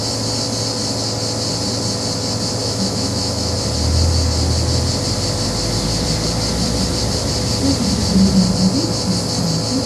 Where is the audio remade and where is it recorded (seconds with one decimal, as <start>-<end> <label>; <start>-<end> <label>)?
0.0-2.6 recorded; 2.6-3.6 remade; 3.6-9.9 recorded